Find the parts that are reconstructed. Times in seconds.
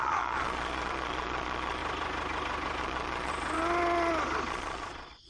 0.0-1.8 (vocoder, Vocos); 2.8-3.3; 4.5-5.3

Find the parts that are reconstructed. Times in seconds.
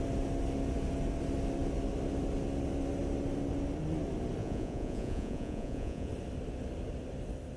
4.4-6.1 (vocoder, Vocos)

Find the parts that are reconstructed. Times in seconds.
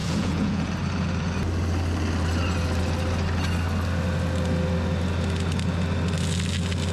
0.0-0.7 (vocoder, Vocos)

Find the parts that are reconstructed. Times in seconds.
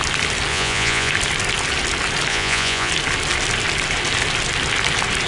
0.5-1.1 (vocoder, Vocos); 2.3-2.9